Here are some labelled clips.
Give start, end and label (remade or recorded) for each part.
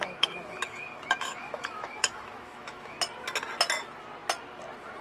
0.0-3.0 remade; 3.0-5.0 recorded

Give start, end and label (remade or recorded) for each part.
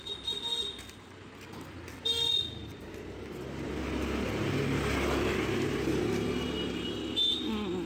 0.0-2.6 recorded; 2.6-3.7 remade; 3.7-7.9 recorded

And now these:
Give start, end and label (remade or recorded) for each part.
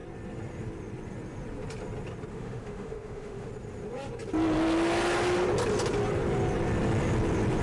0.0-2.3 recorded; 2.3-3.5 remade; 3.5-7.6 recorded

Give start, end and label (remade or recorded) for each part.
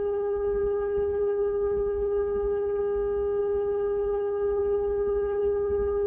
0.0-2.8 remade; 2.8-3.4 recorded; 3.4-6.1 remade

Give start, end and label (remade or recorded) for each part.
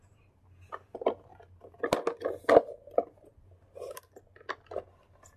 0.0-5.4 recorded